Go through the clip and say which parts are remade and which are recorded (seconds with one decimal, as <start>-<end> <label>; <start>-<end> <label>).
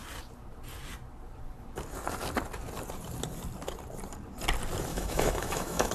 0.0-4.9 recorded; 4.9-5.9 remade